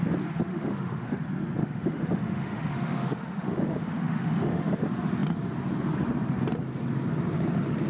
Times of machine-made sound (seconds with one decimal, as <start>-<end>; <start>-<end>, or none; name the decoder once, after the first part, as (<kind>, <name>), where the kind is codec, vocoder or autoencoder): 0.5-1.2 (autoencoder, DAC-VAE); 1.6-4.8